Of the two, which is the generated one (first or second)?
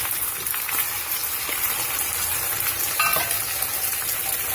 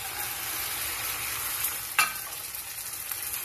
first